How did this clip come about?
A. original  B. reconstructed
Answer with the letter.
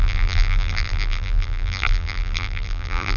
B